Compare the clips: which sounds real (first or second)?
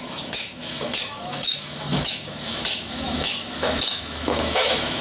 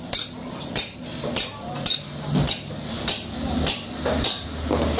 second